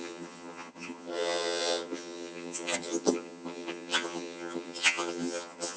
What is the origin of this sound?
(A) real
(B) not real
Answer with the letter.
B